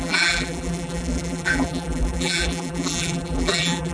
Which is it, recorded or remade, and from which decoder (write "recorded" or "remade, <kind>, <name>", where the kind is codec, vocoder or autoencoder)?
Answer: remade, vocoder, BigVGAN v2